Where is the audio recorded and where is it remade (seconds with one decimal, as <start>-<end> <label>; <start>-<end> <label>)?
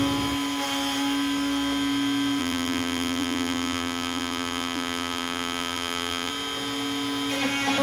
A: 0.0-2.4 recorded; 2.4-6.3 remade; 6.3-7.8 recorded